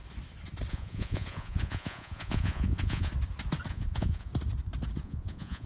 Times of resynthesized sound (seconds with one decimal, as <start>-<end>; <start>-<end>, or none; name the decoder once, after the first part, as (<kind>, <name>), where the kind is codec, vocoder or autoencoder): 0.7-3.1 (vocoder, Vocos); 3.7-4.3; 5.0-5.7